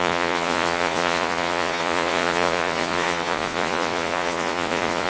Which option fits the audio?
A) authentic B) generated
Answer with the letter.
B